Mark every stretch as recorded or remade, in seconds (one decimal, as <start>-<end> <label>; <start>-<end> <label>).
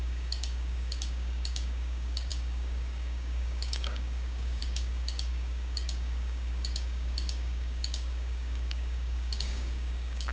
0.0-10.3 remade